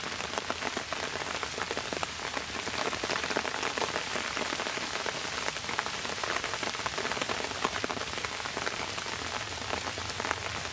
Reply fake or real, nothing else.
real